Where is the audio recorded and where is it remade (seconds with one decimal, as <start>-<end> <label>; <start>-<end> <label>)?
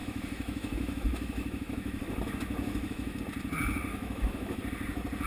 0.0-3.2 remade; 3.2-3.9 recorded; 3.9-4.6 remade; 4.6-5.3 recorded